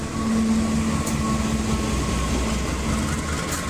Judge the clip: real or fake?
real